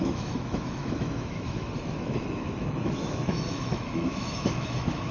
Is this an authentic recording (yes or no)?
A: no